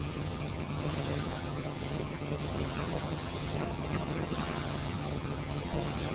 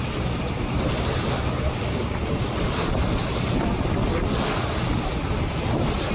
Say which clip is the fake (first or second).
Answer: first